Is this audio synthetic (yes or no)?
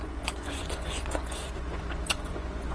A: yes